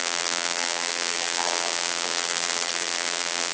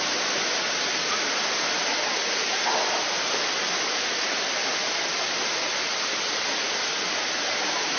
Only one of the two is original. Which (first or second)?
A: second